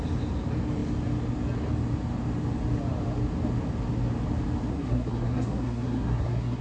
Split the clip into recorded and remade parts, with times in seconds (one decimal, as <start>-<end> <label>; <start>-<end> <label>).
0.0-4.7 recorded; 4.7-6.6 remade